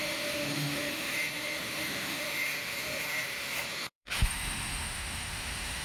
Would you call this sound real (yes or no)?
no